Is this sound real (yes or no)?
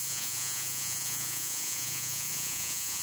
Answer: no